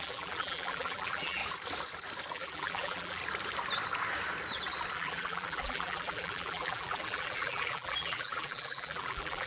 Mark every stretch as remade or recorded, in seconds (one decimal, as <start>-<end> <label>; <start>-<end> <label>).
0.0-1.4 remade; 1.4-2.3 recorded; 2.3-3.2 remade; 3.2-4.9 recorded; 4.9-9.5 remade